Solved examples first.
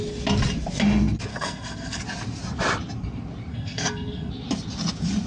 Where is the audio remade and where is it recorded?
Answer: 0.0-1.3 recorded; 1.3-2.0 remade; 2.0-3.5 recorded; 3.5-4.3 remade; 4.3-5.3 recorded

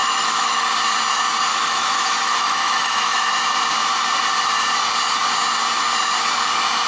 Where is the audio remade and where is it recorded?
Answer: 0.0-0.7 remade; 0.7-1.5 recorded; 1.5-3.3 remade; 3.3-6.9 recorded

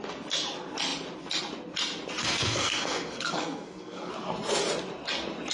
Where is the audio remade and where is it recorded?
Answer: 0.0-2.2 recorded; 2.2-4.1 remade; 4.1-5.5 recorded

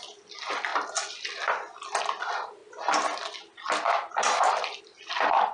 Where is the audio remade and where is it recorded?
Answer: 0.0-5.5 recorded

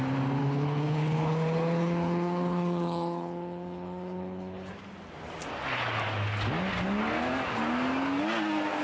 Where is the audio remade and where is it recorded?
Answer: 0.0-0.4 recorded; 0.4-4.7 remade; 4.7-8.8 recorded

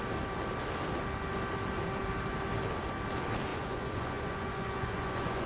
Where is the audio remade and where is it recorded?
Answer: 0.0-3.5 recorded; 3.5-5.5 remade